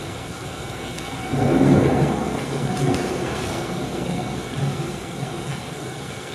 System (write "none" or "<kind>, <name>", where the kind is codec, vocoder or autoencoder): codec, SNAC